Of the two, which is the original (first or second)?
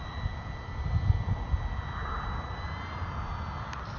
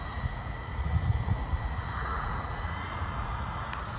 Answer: first